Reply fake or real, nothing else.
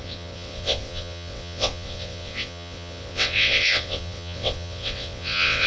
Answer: fake